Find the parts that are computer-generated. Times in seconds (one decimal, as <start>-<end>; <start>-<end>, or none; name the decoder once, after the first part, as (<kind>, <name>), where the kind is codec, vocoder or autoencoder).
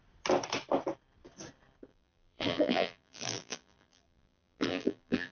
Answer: 1.9-5.3 (vocoder, BigVGAN v2)